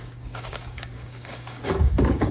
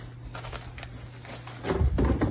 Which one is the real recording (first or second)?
second